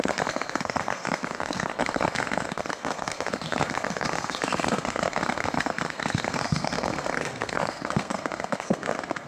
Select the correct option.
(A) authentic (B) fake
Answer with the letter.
B